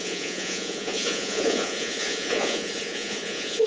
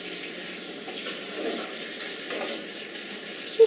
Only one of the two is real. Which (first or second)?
second